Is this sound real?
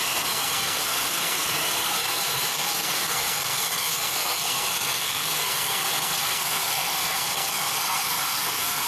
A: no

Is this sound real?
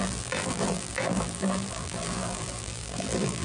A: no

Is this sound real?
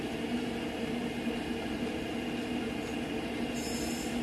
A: yes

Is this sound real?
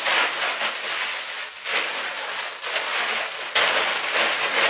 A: yes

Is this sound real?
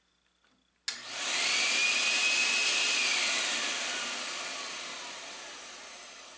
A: yes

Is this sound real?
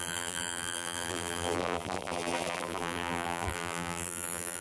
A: no